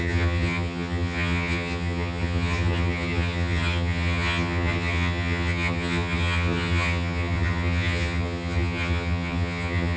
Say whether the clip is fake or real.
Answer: fake